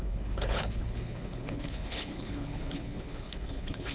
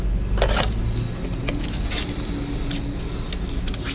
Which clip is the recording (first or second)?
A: second